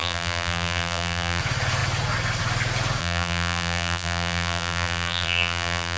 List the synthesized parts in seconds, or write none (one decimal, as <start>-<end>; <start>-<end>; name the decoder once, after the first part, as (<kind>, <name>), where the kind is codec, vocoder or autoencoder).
0.0-1.4 (vocoder, BigVGAN v2); 3.0-6.0

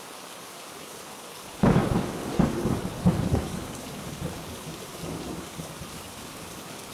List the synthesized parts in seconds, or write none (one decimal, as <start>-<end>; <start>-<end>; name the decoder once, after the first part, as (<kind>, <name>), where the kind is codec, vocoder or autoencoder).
0.0-6.9 (codec, DAC)

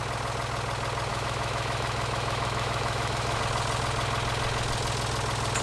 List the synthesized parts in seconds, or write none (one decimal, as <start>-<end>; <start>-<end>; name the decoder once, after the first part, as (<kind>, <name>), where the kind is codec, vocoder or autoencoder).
1.1-3.4 (autoencoder, DAC-VAE)

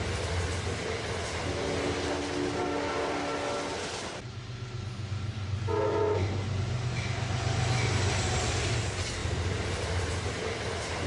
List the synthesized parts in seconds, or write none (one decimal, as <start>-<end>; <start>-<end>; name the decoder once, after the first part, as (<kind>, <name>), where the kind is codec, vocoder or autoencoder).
9.2-10.3 (vocoder, BigVGAN v2)

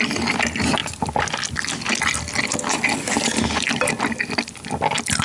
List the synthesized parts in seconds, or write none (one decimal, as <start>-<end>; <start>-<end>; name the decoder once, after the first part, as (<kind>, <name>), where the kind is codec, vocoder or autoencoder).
none

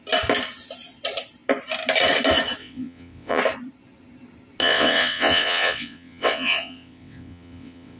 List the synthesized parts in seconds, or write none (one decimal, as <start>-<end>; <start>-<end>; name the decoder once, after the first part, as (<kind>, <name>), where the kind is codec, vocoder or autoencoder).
2.6-3.4 (vocoder, WaveNeXt); 4.6-8.0